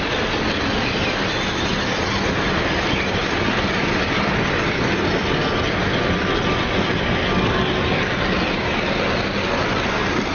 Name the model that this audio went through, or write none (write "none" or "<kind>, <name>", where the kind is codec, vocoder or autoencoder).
none